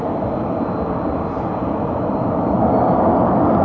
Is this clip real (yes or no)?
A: yes